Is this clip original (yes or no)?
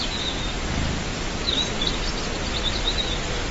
yes